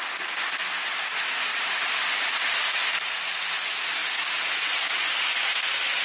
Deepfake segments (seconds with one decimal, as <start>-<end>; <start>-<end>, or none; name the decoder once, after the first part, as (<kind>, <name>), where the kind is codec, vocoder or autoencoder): 1.5-2.1 (vocoder, BigVGAN v2); 4.0-5.1